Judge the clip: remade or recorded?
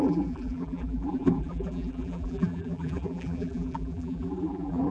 remade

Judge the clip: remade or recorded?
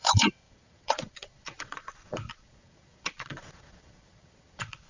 remade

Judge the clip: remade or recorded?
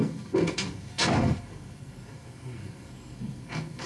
remade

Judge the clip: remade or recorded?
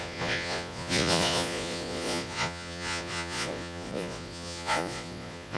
remade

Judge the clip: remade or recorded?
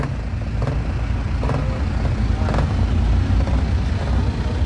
recorded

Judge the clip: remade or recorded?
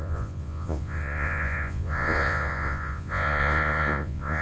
remade